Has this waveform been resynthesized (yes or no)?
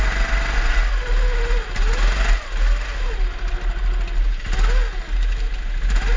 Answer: no